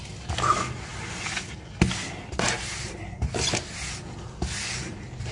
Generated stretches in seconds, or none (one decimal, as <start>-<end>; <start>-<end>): none